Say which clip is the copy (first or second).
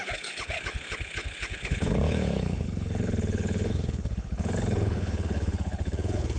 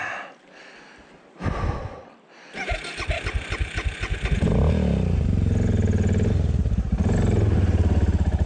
first